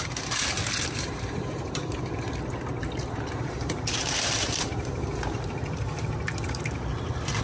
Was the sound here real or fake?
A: fake